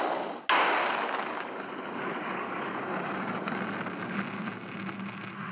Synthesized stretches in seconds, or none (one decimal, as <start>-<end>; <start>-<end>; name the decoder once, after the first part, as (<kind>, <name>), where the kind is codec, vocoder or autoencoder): 0.8-3.6 (codec, DAC)